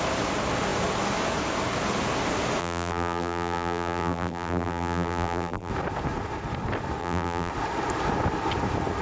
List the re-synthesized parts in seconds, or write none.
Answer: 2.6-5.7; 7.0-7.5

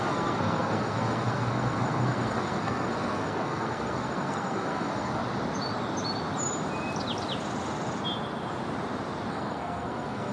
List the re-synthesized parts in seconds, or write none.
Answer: 0.0-5.2; 9.3-10.3

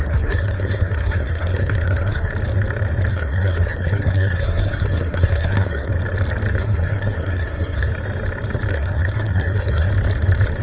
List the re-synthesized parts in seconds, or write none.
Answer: 0.0-2.3; 3.1-5.9; 6.6-7.9; 8.7-9.9